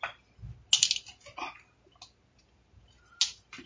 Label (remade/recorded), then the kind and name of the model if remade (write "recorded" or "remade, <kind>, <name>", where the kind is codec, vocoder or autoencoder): recorded